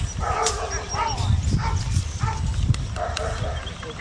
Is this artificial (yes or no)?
yes